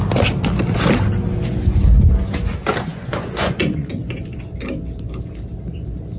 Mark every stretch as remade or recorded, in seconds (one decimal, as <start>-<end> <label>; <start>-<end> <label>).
0.0-2.9 recorded; 2.9-3.9 remade; 3.9-6.2 recorded